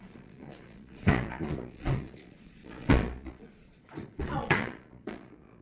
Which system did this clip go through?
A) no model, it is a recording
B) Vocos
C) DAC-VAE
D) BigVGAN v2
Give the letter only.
B